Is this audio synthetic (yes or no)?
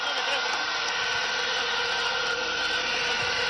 no